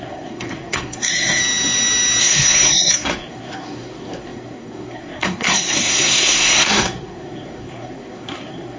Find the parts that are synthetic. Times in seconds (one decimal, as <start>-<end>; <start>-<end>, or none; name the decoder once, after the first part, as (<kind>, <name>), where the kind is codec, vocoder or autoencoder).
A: 0.0-1.4 (codec, SNAC); 2.2-8.8